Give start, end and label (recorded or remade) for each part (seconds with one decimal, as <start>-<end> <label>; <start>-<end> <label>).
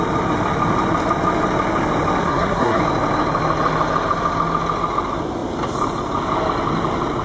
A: 0.0-2.2 recorded; 2.2-2.8 remade; 2.8-7.2 recorded